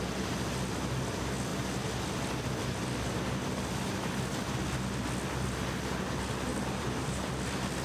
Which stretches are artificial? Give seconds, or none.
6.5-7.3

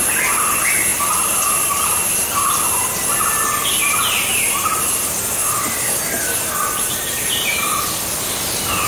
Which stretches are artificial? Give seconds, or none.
6.6-7.7

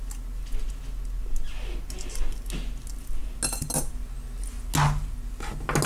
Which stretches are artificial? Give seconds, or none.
none

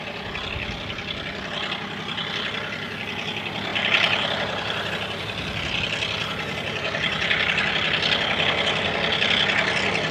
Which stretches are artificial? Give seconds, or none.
3.7-4.9; 6.2-7.6

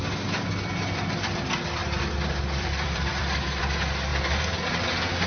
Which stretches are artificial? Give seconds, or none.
0.7-1.4; 1.8-3.6